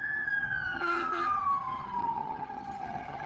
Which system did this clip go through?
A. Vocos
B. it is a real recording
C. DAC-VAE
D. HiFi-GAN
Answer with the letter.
D